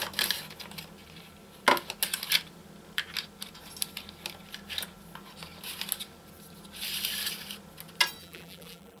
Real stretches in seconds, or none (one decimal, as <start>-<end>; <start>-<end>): 0.0-8.2